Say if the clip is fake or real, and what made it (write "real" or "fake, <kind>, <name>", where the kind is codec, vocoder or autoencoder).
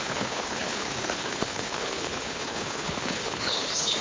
fake, codec, HILCodec